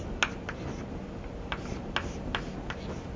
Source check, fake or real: real